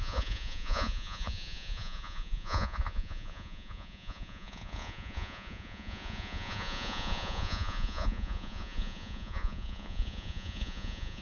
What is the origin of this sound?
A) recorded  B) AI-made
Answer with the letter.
B